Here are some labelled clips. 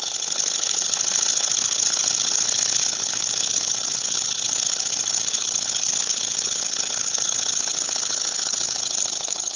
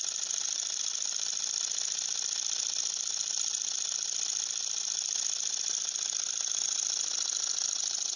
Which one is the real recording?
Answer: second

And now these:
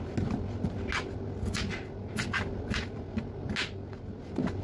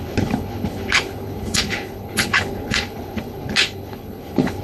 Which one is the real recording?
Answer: first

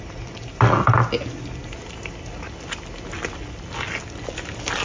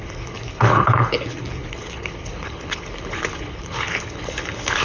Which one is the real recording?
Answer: first